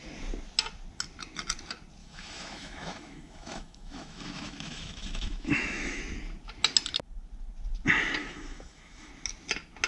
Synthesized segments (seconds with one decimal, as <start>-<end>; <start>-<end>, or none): 2.0-6.0; 8.2-9.1